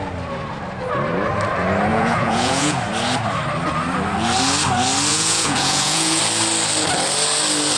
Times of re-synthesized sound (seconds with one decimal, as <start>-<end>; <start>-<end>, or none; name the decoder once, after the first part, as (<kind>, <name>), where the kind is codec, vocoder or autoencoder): 1.9-2.8 (vocoder, Vocos); 5.1-6.2